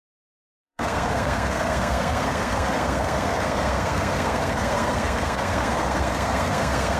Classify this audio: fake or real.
fake